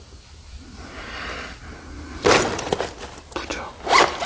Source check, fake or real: real